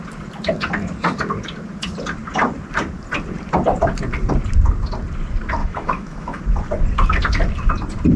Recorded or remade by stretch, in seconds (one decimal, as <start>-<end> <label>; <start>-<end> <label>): 0.0-5.6 recorded; 5.6-6.4 remade; 6.4-8.2 recorded